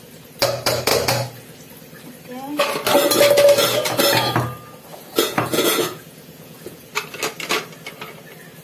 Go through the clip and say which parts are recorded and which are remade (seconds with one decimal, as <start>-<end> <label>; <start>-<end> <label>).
0.0-4.9 recorded; 4.9-6.9 remade; 6.9-8.6 recorded